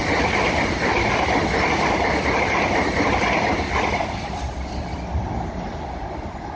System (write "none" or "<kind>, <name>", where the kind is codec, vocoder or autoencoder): none